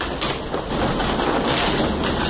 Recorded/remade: recorded